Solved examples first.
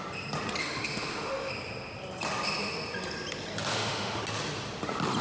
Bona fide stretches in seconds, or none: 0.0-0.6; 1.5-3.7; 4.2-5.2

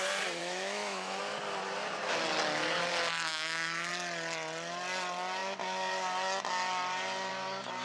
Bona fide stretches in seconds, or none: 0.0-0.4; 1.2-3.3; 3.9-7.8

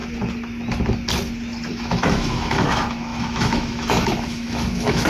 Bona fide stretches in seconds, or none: 0.0-1.7

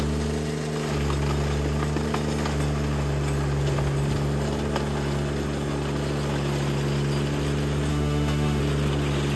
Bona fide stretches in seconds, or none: 0.0-7.9; 8.6-9.4

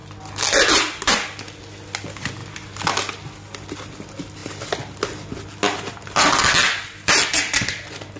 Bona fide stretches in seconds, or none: 0.0-8.2

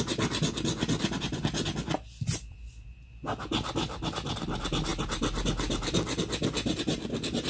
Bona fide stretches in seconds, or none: 0.0-7.5